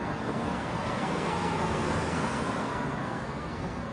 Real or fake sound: fake